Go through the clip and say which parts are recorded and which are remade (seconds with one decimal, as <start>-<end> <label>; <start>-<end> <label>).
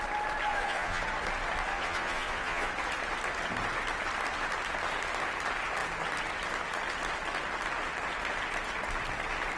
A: 0.0-0.5 recorded; 0.5-1.0 remade; 1.0-1.7 recorded; 1.7-2.7 remade; 2.7-9.6 recorded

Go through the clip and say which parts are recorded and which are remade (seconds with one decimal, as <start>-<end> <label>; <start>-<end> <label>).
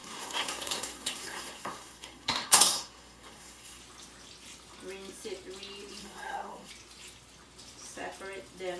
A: 0.0-3.8 remade; 3.8-6.0 recorded; 6.0-6.7 remade; 6.7-8.8 recorded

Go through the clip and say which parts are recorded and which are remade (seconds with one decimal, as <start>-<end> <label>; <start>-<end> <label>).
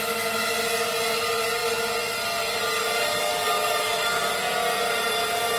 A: 0.0-3.1 recorded; 3.1-4.3 remade; 4.3-5.6 recorded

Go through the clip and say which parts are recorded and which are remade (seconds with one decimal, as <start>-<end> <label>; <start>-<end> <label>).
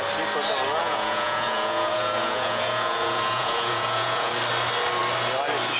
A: 0.0-0.8 recorded; 0.8-4.3 remade; 4.3-5.8 recorded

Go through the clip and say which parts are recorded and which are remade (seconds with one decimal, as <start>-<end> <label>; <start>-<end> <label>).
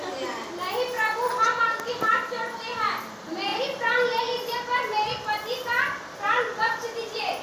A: 0.0-7.4 recorded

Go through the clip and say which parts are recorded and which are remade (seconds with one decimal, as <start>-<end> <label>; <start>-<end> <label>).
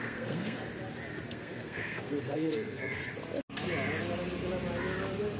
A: 0.0-0.7 remade; 0.7-1.3 recorded; 1.3-3.0 remade; 3.0-5.4 recorded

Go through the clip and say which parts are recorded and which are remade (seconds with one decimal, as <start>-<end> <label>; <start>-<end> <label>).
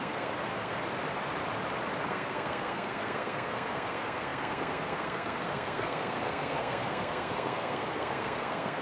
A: 0.0-0.8 remade; 0.8-2.1 recorded; 2.1-8.8 remade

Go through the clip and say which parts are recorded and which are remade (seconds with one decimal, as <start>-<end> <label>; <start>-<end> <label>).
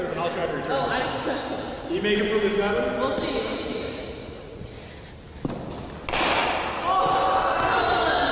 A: 0.0-3.5 recorded; 3.5-4.7 remade; 4.7-8.3 recorded